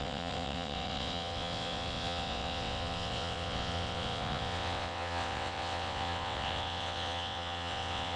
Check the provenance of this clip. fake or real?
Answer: fake